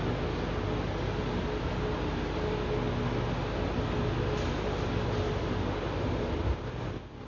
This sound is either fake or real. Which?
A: real